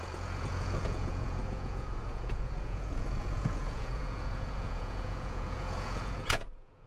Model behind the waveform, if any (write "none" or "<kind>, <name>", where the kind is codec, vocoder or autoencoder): vocoder, Vocos